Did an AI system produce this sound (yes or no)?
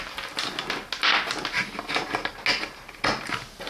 no